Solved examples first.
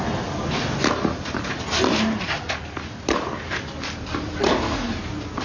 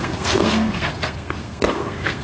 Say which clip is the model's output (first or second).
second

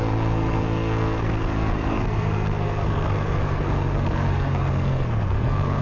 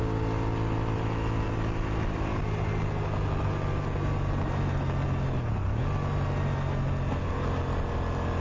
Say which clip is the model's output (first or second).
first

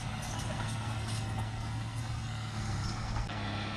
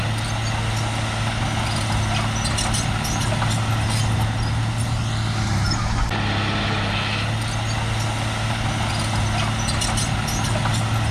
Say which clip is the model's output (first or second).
first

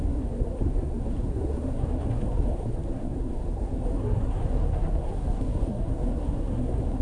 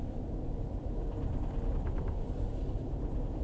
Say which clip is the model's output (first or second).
first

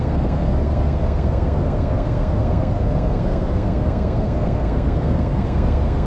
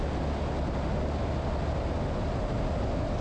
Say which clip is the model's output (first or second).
first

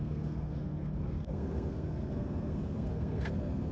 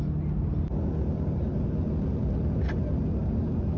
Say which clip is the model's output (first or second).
first